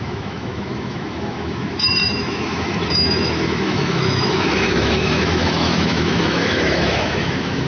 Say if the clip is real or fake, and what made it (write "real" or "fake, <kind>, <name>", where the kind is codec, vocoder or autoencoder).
fake, autoencoder, DAC-VAE